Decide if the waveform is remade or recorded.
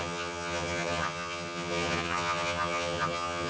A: remade